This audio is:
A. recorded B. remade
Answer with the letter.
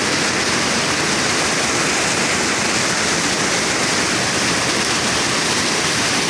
A